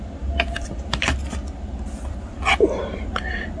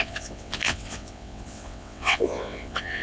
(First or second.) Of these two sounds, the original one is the first